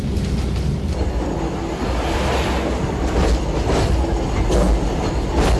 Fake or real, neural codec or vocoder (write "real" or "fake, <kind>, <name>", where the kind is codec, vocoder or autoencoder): real